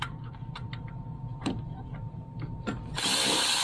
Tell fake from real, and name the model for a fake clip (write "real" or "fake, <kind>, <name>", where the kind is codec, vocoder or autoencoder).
fake, vocoder, BigVGAN v2